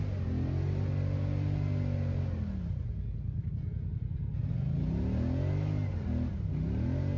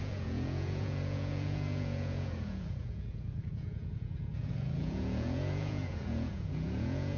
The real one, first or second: first